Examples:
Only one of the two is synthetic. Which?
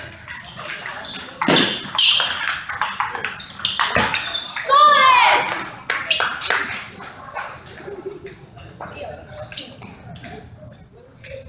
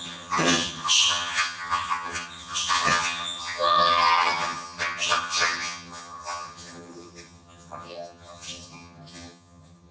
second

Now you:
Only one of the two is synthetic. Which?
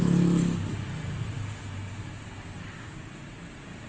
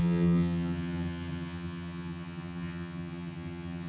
second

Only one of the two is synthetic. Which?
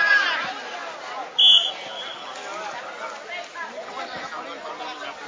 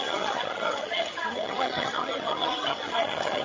second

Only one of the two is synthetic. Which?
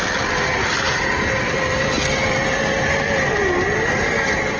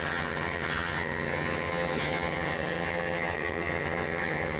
second